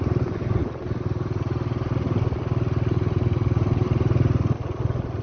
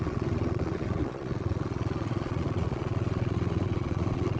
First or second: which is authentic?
first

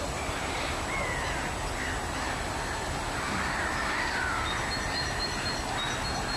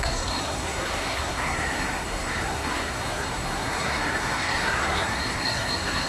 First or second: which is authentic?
first